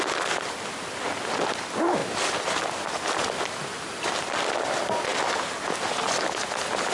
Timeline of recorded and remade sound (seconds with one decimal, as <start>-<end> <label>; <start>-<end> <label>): 0.0-6.9 recorded